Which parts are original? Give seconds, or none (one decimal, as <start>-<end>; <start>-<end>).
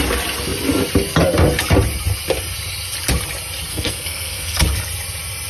0.0-3.7; 4.6-5.5